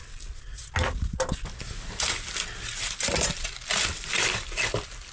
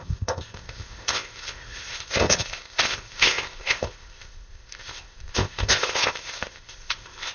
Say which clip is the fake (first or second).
second